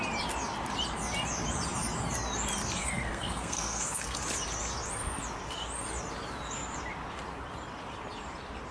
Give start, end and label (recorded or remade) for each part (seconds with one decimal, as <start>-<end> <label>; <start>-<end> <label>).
0.0-2.8 recorded; 2.8-4.2 remade; 4.2-8.7 recorded